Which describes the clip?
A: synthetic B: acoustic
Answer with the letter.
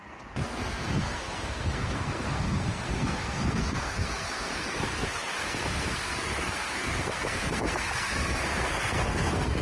A